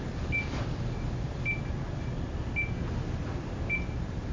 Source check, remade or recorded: recorded